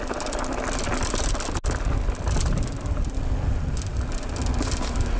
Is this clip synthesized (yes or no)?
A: no